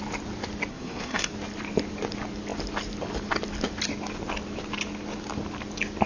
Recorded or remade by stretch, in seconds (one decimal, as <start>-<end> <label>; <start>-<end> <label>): 0.0-0.7 recorded; 0.7-1.3 remade; 1.3-6.1 recorded